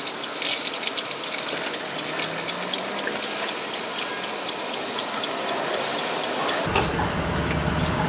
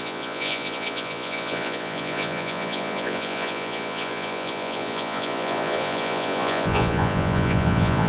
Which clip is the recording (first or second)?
first